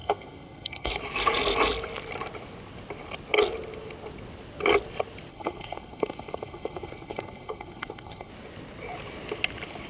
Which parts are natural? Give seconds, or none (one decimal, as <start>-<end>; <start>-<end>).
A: 0.9-5.3; 8.3-9.9